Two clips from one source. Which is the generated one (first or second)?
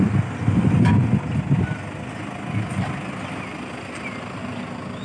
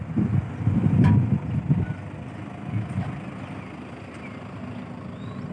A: second